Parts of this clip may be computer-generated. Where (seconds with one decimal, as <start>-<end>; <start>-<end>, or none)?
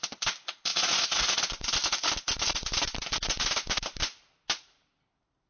0.7-1.4